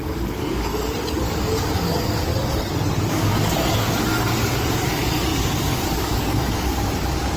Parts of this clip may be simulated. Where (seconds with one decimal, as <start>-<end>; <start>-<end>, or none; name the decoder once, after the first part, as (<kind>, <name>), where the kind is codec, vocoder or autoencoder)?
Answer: 0.0-2.3 (codec, DAC); 3.1-7.4